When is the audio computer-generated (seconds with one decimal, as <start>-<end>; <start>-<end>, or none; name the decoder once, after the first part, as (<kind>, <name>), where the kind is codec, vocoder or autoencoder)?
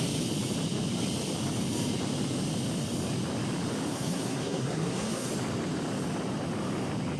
3.9-5.3 (codec, SNAC)